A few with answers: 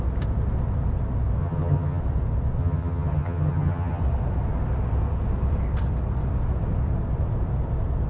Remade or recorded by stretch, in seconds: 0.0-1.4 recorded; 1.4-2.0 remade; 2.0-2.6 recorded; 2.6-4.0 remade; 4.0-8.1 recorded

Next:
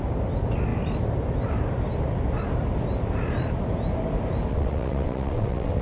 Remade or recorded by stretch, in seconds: 0.0-4.5 recorded; 4.5-5.8 remade

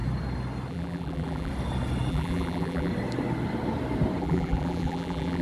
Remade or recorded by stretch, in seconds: 0.0-0.7 recorded; 0.7-1.5 remade; 1.5-2.1 recorded; 2.1-2.9 remade; 2.9-4.2 recorded; 4.2-5.4 remade

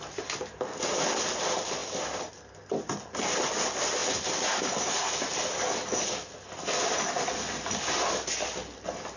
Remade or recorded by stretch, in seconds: 0.0-9.2 recorded

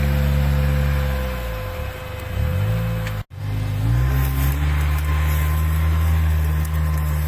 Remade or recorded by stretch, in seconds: 0.0-7.3 recorded

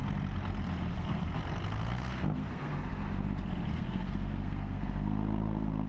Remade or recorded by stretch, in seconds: 0.0-0.9 recorded; 0.9-1.4 remade; 1.4-1.9 recorded; 1.9-2.9 remade; 2.9-3.7 recorded; 3.7-5.9 remade